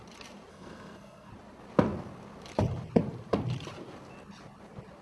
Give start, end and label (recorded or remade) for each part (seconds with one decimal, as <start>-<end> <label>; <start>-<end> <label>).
0.0-0.5 recorded; 0.5-1.3 remade; 1.3-5.0 recorded

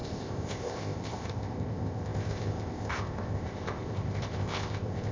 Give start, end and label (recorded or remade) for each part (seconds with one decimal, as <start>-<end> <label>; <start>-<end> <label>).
0.0-5.1 remade

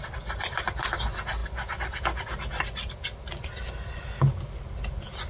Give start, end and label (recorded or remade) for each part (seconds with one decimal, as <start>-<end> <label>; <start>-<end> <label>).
0.0-5.3 recorded

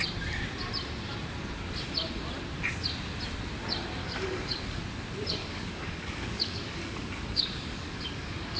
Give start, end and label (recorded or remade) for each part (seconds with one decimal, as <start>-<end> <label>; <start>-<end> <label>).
0.0-4.0 recorded; 4.0-4.8 remade; 4.8-5.4 recorded; 5.4-8.6 remade

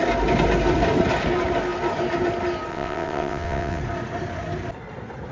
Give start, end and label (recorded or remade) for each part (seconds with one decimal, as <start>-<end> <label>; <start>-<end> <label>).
0.0-2.7 recorded; 2.7-3.8 remade; 3.8-5.3 recorded

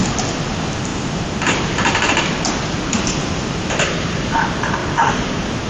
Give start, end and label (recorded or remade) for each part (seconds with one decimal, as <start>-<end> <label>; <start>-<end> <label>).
0.0-0.9 recorded; 0.9-4.3 remade; 4.3-5.7 recorded